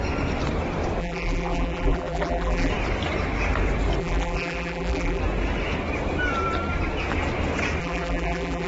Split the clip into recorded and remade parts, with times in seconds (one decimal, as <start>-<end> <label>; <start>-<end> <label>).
0.0-1.0 recorded; 1.0-2.7 remade; 2.7-4.0 recorded; 4.0-5.2 remade; 5.2-7.8 recorded; 7.8-8.7 remade